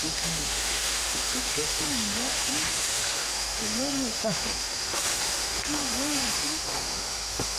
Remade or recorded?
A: remade